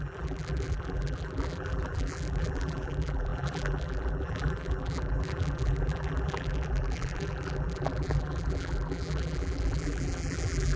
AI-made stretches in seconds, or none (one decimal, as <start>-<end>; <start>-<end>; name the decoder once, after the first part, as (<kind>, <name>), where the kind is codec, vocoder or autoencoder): 0.0-10.8 (vocoder, BigVGAN v2)